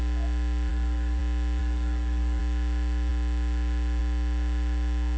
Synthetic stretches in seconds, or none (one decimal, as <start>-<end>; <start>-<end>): 0.7-1.2; 1.6-2.4